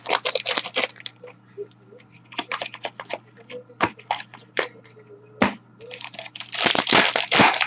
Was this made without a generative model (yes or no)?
yes